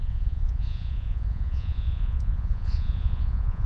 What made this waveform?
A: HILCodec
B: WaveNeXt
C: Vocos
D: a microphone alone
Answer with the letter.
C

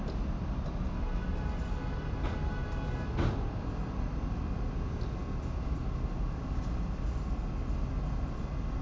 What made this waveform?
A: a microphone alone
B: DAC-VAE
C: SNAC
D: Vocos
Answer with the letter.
A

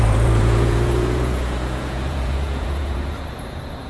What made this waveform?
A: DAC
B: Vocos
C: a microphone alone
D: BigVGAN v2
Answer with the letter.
B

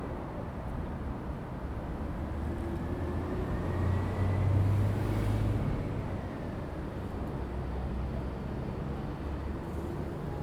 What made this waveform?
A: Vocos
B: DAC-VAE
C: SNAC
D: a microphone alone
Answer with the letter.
D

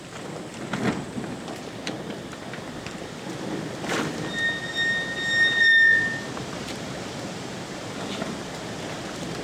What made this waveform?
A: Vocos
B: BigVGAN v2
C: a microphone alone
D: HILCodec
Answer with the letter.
C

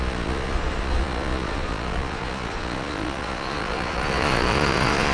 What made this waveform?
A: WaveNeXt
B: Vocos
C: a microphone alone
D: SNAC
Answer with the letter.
B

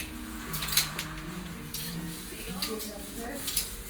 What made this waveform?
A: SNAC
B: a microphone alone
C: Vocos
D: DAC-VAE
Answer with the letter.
C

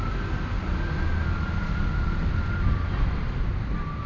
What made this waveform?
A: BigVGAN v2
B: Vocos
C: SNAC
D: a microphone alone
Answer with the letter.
D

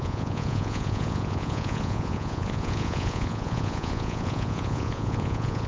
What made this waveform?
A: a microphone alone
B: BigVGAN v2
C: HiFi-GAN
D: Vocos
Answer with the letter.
D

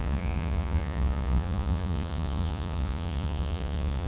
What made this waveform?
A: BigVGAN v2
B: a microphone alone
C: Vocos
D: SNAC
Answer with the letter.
C